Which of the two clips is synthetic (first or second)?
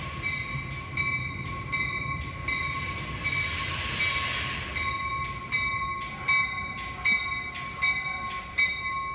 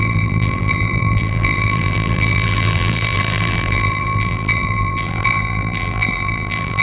second